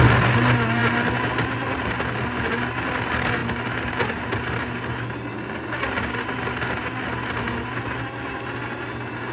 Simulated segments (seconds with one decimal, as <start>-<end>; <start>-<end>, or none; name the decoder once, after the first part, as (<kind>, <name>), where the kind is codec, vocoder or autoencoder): none